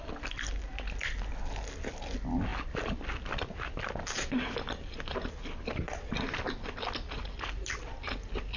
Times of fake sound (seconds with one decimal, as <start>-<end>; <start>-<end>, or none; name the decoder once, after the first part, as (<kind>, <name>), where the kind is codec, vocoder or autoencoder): none